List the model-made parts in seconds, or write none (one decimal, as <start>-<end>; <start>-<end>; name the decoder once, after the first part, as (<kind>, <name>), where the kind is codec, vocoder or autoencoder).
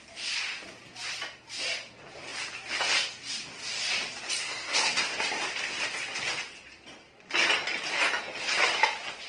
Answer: 4.4-5.0 (codec, SNAC)